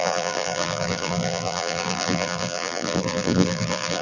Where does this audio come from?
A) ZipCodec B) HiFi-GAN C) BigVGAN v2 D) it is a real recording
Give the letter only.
C